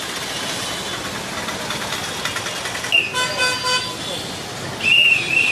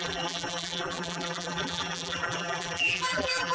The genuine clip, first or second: first